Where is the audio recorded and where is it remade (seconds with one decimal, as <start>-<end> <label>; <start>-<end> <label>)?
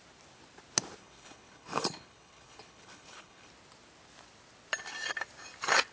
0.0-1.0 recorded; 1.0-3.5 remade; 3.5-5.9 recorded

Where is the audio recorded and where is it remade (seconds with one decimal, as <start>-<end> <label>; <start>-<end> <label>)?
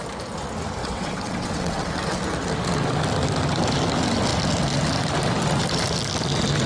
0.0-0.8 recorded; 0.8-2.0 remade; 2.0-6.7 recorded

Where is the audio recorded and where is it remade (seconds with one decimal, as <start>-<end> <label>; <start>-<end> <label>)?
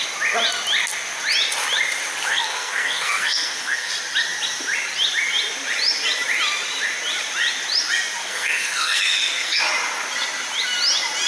0.0-2.3 recorded; 2.3-3.9 remade; 3.9-8.2 recorded; 8.2-9.6 remade; 9.6-11.3 recorded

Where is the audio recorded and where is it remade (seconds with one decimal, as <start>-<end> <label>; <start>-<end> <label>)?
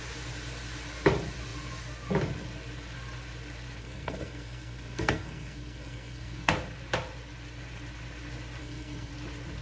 0.0-3.8 recorded; 3.8-6.5 remade; 6.5-8.6 recorded; 8.6-9.1 remade; 9.1-9.6 recorded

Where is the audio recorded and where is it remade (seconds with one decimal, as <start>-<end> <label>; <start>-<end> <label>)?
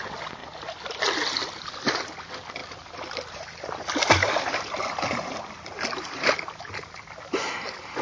0.0-2.6 recorded; 2.6-6.0 remade; 6.0-8.0 recorded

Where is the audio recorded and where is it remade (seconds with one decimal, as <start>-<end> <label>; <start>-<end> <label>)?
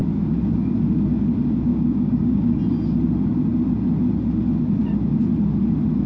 0.0-1.7 recorded; 1.7-2.5 remade; 2.5-6.1 recorded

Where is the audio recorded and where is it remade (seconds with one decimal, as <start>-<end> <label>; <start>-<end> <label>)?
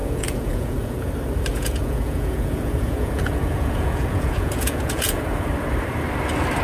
0.0-1.1 remade; 1.1-1.5 recorded; 1.5-5.5 remade; 5.5-6.6 recorded